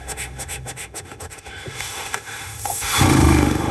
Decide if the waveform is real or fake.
fake